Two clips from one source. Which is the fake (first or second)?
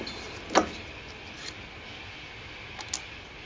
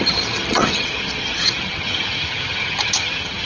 second